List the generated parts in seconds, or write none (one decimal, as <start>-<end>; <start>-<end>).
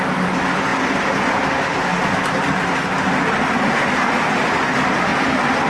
0.0-0.7; 4.1-5.1